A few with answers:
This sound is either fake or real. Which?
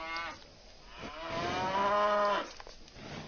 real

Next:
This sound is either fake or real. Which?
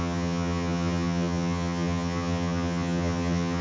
fake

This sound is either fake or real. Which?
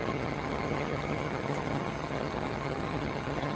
fake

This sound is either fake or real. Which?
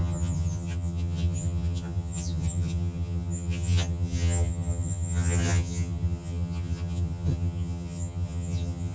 fake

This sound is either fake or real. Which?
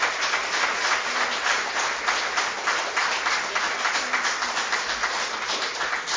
real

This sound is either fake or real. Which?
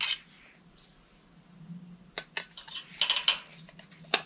real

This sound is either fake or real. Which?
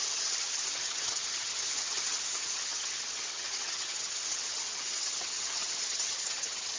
fake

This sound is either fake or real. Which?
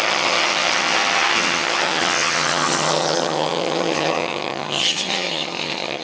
fake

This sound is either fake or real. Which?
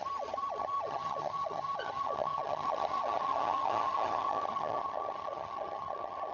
fake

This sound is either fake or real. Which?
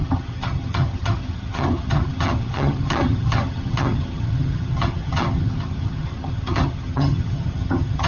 fake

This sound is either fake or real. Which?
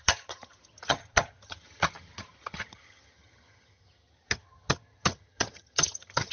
fake